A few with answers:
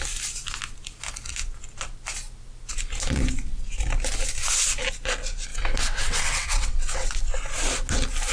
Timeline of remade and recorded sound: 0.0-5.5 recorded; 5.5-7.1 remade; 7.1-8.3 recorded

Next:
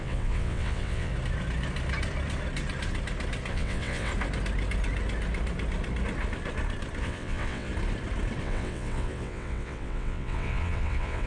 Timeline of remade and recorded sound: 0.0-1.1 remade; 1.1-3.5 recorded; 3.5-4.1 remade; 4.1-7.0 recorded; 7.0-7.7 remade; 7.7-8.4 recorded; 8.4-11.3 remade

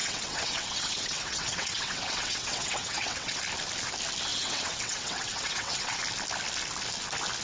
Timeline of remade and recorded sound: 0.0-3.4 remade; 3.4-4.3 recorded; 4.3-6.0 remade; 6.0-7.4 recorded

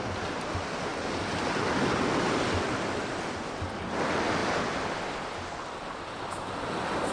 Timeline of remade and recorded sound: 0.0-7.1 recorded

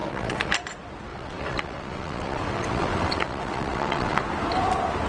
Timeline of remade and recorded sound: 0.0-0.5 remade; 0.5-1.1 recorded; 1.1-4.2 remade; 4.2-5.1 recorded